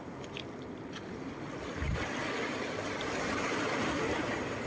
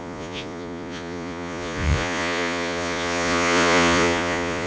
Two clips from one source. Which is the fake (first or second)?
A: second